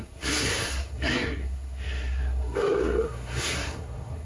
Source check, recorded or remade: remade